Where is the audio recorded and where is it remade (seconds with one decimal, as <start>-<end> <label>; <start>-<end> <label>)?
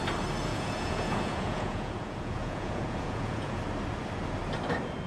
0.0-0.5 recorded; 0.5-3.6 remade; 3.6-5.1 recorded